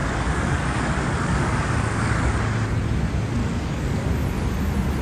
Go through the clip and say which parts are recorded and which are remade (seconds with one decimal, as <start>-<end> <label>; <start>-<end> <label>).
0.0-2.4 remade; 2.4-3.4 recorded; 3.4-4.1 remade; 4.1-5.0 recorded